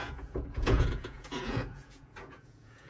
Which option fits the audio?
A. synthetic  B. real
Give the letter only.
A